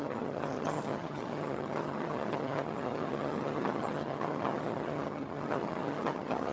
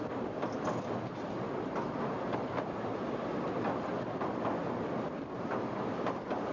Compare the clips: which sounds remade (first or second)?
first